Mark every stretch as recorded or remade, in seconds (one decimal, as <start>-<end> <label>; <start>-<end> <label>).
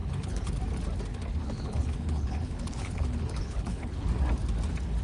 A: 0.0-0.6 remade; 0.6-1.1 recorded; 1.1-4.1 remade; 4.1-5.0 recorded